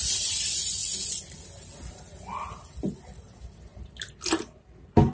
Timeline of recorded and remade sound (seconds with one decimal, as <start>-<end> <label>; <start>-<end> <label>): 0.0-0.8 remade; 0.8-3.2 recorded; 3.2-3.7 remade; 3.7-4.6 recorded; 4.6-5.1 remade